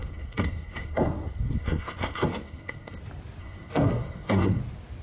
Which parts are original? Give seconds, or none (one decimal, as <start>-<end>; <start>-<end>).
3.0-3.4; 4.6-5.0